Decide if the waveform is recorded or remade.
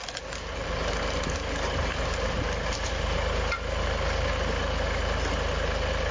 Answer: recorded